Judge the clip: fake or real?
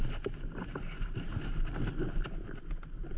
real